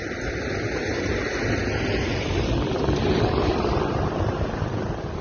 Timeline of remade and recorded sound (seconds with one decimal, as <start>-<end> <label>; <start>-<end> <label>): 0.0-5.2 recorded